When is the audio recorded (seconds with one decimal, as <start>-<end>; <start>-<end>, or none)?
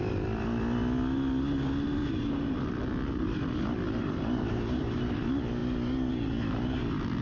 0.0-4.0; 5.0-7.2